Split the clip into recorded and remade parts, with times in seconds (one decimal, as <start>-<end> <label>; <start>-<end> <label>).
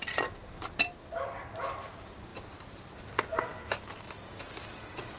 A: 0.0-2.3 recorded; 2.3-3.0 remade; 3.0-5.2 recorded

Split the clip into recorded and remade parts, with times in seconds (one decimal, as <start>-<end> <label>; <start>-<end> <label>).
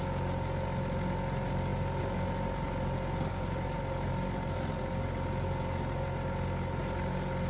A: 0.0-7.5 recorded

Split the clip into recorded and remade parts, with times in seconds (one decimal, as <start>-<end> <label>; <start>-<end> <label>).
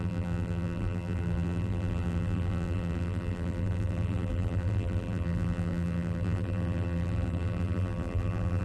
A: 0.0-8.6 remade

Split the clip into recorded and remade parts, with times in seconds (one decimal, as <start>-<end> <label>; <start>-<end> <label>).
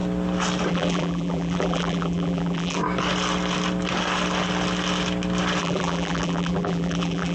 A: 0.0-0.7 recorded; 0.7-2.8 remade; 2.8-5.6 recorded; 5.6-7.3 remade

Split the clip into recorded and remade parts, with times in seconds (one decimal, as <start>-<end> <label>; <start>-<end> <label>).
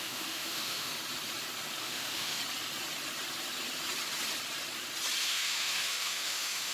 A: 0.0-0.9 remade; 0.9-1.8 recorded; 1.8-2.4 remade; 2.4-5.2 recorded; 5.2-6.7 remade